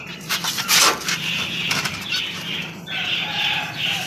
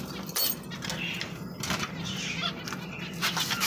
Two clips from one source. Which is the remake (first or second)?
first